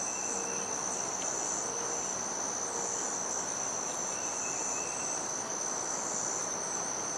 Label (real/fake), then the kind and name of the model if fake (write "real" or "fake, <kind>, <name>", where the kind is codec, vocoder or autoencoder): real